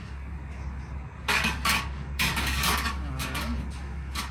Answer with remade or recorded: remade